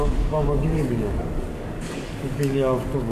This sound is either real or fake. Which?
fake